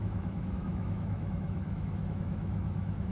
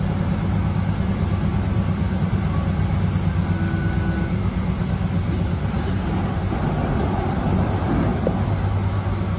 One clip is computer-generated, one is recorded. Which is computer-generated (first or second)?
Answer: first